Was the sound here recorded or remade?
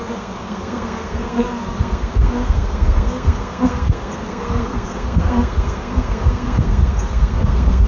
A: remade